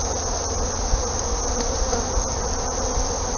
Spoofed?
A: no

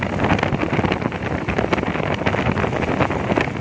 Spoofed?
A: no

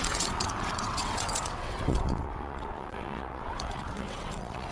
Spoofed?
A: yes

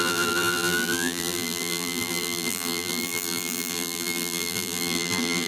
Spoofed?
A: yes